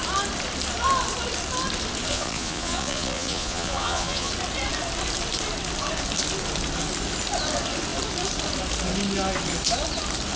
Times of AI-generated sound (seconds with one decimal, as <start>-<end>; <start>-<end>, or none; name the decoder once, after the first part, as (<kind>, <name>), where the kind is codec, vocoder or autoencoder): 2.1-4.3 (vocoder, Vocos)